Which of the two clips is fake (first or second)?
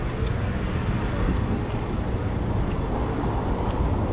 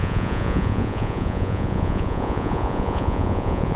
second